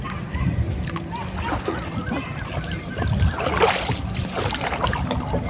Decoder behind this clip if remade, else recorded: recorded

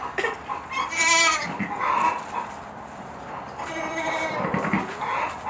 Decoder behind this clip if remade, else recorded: remade, vocoder, BigVGAN v2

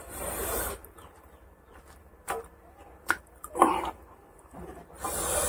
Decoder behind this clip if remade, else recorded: remade, vocoder, BigVGAN v2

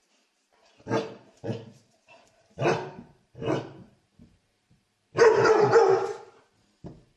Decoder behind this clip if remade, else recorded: remade, vocoder, BigVGAN v2